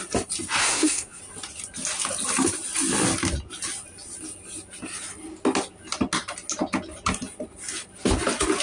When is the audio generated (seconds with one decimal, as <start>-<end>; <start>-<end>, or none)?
0.6-1.2